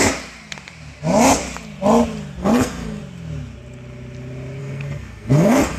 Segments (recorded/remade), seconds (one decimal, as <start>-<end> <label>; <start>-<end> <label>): 0.0-2.4 recorded; 2.4-3.0 remade; 3.0-4.6 recorded; 4.6-5.8 remade